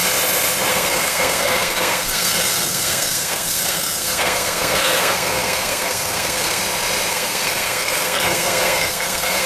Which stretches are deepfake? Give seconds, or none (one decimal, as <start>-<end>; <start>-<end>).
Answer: 0.7-6.6; 7.1-9.5